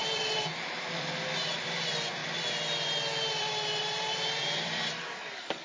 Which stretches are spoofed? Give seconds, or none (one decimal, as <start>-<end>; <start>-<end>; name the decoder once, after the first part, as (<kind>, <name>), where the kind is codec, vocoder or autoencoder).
0.0-2.2 (vocoder, BigVGAN v2); 3.3-5.6